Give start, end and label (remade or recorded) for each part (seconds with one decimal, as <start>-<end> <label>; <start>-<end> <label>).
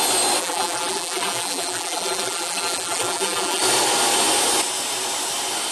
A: 0.0-0.4 recorded; 0.4-3.6 remade; 3.6-5.7 recorded